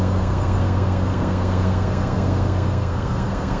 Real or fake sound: fake